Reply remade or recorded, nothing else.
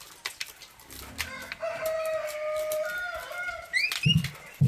recorded